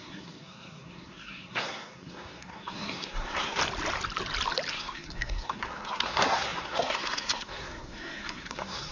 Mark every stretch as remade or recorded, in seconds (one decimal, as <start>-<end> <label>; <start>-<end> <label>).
0.0-3.6 remade; 3.6-4.7 recorded; 4.7-8.9 remade